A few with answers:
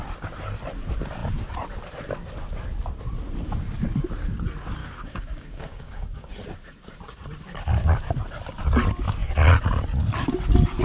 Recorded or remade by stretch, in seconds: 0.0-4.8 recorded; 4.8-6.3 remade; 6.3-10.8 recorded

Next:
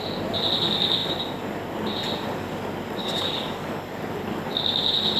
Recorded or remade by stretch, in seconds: 0.0-3.0 recorded; 3.0-4.0 remade; 4.0-5.2 recorded

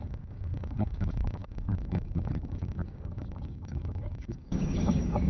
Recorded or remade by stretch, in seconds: 0.0-5.3 remade

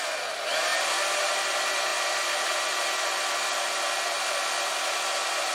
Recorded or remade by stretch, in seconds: 0.0-5.5 recorded

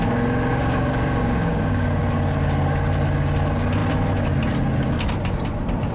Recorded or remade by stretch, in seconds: 0.0-0.5 recorded; 0.5-2.0 remade; 2.0-5.9 recorded